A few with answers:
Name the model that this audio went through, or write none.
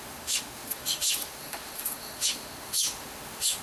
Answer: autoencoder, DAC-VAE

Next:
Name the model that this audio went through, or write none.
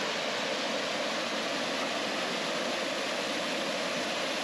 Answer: none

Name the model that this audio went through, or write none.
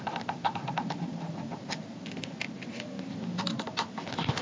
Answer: none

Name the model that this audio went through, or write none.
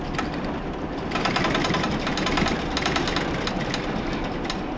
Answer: none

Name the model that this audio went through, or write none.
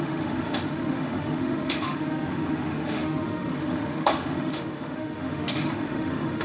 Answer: autoencoder, DAC-VAE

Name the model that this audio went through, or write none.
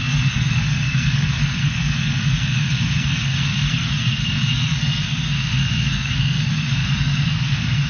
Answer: codec, SNAC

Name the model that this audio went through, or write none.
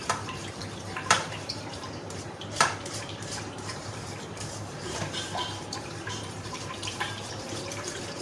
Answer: vocoder, BigVGAN v2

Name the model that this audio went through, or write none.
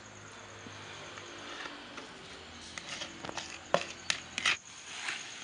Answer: none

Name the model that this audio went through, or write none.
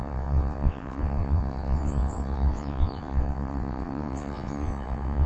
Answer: vocoder, WaveNeXt